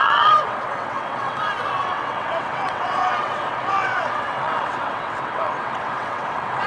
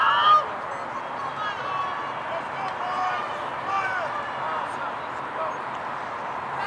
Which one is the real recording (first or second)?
second